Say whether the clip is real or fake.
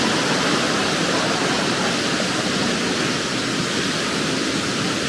real